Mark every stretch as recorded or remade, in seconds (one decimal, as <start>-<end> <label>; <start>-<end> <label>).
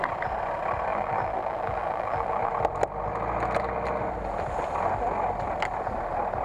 0.0-0.9 recorded; 0.9-2.5 remade; 2.5-6.4 recorded